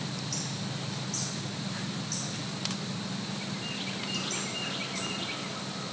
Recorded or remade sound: recorded